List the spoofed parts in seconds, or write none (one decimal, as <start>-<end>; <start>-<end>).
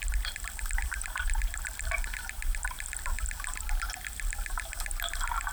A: none